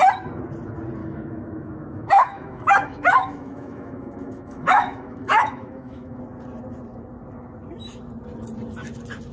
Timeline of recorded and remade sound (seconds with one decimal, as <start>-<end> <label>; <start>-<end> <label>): 0.0-1.0 recorded; 1.0-6.2 remade; 6.2-9.3 recorded